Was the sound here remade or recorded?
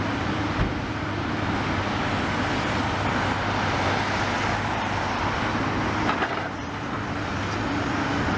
recorded